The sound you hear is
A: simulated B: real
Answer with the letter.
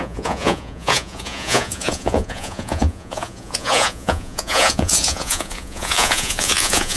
A